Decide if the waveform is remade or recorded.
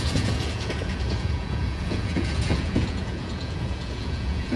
remade